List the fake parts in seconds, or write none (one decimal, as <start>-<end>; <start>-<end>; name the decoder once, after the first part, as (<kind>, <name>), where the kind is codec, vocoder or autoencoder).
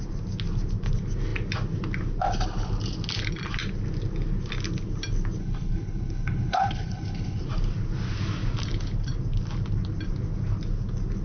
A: 5.4-7.4 (codec, HILCodec)